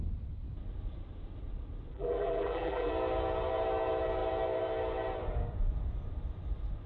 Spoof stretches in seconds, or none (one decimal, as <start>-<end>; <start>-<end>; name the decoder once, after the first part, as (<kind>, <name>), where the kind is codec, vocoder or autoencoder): 1.9-2.9 (vocoder, BigVGAN v2)

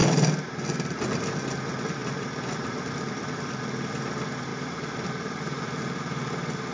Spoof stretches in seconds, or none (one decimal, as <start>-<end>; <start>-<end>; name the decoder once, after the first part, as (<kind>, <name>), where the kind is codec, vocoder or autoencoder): 0.0-1.1 (vocoder, BigVGAN v2); 2.0-3.6; 4.5-5.8

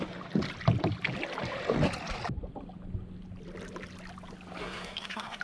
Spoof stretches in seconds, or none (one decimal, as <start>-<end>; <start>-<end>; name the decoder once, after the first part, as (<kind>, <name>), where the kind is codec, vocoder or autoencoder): 4.6-5.4 (codec, SNAC)

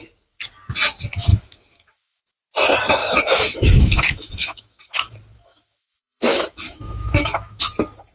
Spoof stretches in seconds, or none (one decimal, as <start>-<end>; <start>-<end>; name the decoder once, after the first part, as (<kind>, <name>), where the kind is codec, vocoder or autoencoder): 1.3-2.2 (autoencoder, DAC-VAE); 3.0-4.8; 5.5-7.6

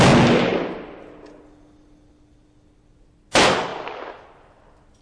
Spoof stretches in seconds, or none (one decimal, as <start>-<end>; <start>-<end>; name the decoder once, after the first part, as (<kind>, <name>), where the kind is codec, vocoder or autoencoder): none